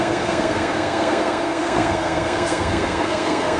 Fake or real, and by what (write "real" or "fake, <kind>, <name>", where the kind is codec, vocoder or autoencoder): fake, codec, SNAC